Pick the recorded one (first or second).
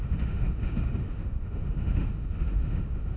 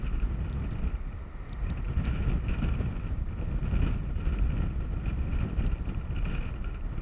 second